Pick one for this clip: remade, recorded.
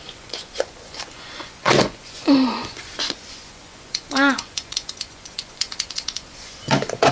remade